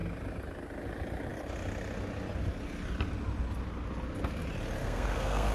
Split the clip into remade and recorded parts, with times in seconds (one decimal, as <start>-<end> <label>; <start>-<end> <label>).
0.0-4.8 recorded; 4.8-5.5 remade